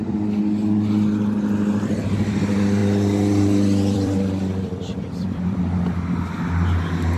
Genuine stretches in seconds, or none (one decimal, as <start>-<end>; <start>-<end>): 0.0-2.8; 5.6-7.2